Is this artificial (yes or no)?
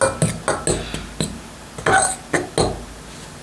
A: no